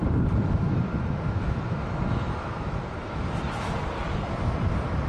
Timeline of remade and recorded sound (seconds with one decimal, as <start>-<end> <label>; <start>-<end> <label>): 0.0-0.9 recorded; 0.9-3.2 remade; 3.2-5.1 recorded